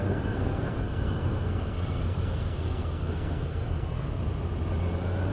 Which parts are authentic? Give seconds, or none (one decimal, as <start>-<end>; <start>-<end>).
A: 4.2-5.3